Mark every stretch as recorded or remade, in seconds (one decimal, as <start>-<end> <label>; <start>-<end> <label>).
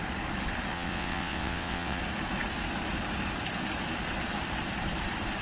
0.0-0.7 recorded; 0.7-2.0 remade; 2.0-5.4 recorded